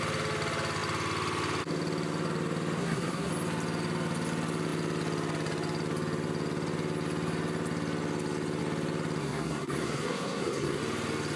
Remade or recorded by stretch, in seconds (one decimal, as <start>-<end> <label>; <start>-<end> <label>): 0.0-2.8 recorded; 2.8-3.3 remade; 3.3-9.2 recorded; 9.2-10.8 remade; 10.8-11.4 recorded